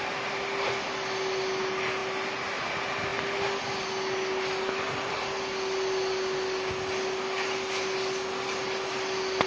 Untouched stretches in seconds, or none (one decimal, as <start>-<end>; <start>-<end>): 0.0-9.5